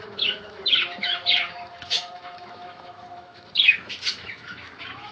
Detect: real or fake fake